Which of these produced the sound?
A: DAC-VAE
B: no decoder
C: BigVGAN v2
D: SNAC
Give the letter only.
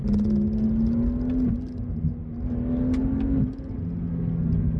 B